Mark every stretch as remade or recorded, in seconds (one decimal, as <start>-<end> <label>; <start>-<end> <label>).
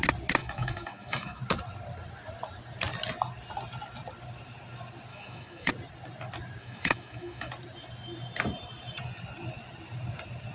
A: 0.0-0.4 recorded; 0.4-1.4 remade; 1.4-5.1 recorded; 5.1-5.7 remade; 5.7-6.6 recorded; 6.6-7.5 remade; 7.5-10.5 recorded